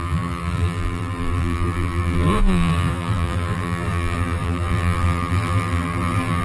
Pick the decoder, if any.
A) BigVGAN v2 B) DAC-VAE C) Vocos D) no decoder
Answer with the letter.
A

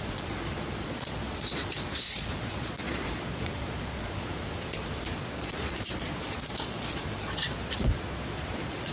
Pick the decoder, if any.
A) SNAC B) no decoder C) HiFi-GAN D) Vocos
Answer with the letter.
D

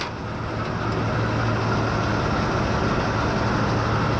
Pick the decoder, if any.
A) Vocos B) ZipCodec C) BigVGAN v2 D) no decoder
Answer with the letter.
D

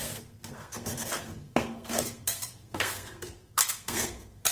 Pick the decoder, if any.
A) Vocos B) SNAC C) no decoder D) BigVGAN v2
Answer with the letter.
B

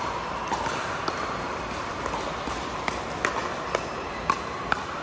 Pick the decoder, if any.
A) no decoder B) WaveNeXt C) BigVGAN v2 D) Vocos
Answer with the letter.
A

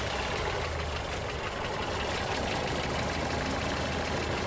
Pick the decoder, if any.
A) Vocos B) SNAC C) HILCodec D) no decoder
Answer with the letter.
D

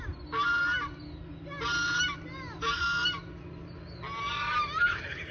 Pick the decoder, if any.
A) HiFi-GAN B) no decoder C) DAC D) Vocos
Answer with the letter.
B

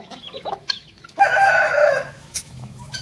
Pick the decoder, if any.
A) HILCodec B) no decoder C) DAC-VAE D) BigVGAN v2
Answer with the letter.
C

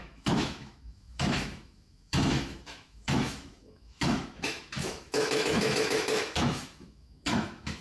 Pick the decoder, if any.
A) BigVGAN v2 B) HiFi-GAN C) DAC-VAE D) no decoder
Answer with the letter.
C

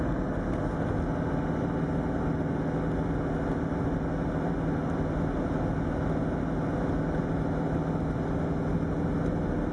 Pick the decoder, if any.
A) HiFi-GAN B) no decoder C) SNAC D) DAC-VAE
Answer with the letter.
B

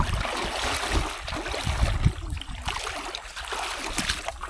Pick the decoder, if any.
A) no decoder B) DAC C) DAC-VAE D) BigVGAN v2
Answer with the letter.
A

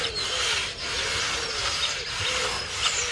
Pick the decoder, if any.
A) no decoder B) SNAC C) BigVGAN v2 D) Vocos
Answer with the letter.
A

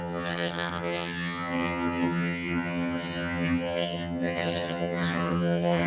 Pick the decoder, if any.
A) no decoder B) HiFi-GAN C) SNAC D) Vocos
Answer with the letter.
B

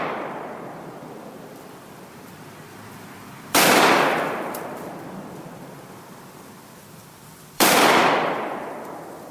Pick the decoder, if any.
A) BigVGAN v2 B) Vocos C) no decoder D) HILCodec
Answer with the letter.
A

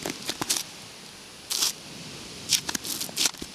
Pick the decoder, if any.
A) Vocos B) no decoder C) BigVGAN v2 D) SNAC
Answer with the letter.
B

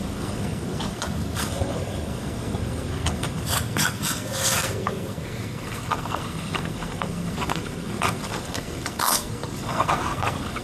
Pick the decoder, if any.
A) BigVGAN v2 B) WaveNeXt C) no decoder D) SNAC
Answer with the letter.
D